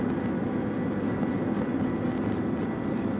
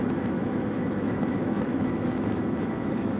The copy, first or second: second